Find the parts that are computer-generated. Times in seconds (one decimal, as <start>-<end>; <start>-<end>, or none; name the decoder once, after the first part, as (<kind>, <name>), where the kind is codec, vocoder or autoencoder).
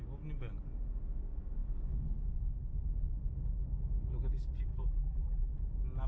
4.7-5.5 (vocoder, BigVGAN v2)